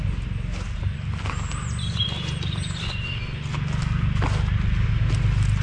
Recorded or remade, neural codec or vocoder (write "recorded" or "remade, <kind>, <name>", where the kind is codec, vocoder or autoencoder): recorded